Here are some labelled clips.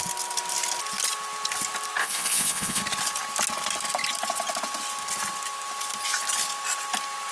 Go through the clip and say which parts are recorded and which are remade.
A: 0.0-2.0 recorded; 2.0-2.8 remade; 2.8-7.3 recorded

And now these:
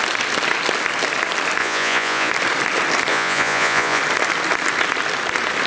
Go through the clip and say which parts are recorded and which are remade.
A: 0.0-1.6 recorded; 1.6-2.3 remade; 2.3-3.1 recorded; 3.1-4.0 remade; 4.0-5.7 recorded

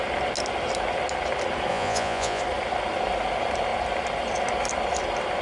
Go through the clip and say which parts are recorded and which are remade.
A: 0.0-1.7 recorded; 1.7-2.4 remade; 2.4-5.4 recorded

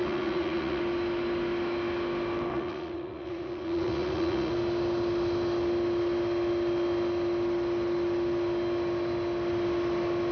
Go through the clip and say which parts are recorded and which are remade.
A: 0.0-0.8 remade; 0.8-2.5 recorded; 2.5-4.5 remade; 4.5-10.3 recorded